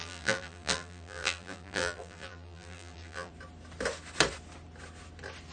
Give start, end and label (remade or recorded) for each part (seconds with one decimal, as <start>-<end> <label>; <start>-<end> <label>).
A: 0.0-3.3 remade; 3.3-5.5 recorded